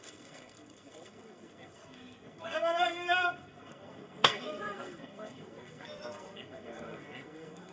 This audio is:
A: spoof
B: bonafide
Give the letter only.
A